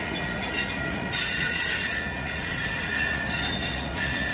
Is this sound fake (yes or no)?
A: yes